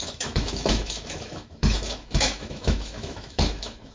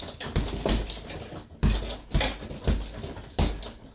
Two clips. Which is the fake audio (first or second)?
first